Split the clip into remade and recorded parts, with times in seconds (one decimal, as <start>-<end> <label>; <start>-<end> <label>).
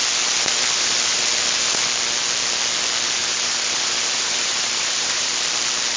0.0-3.2 recorded; 3.2-5.3 remade; 5.3-6.0 recorded